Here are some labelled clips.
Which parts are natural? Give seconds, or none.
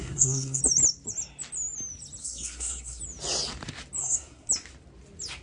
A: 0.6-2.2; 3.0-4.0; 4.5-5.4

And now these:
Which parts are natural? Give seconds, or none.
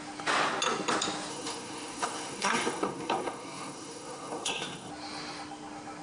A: 0.0-1.3; 4.9-6.0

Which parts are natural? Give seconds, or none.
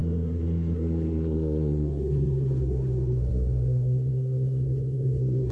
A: none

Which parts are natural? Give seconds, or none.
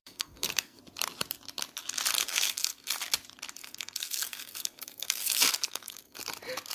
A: 0.8-2.2; 2.9-3.6; 6.2-6.7